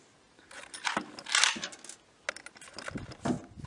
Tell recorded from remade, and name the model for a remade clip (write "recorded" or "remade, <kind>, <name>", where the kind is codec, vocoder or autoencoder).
recorded